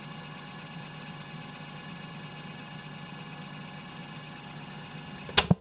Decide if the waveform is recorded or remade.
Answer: recorded